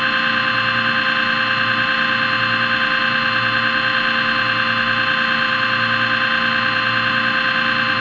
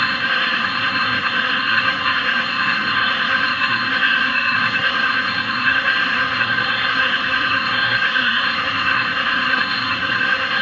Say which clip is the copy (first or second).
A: second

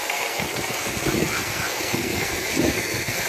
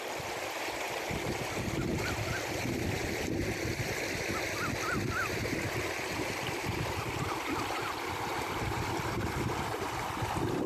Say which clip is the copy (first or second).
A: first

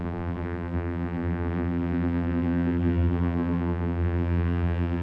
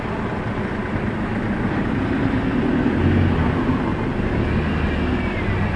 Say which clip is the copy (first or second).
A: first